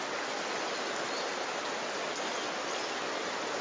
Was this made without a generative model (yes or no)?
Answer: yes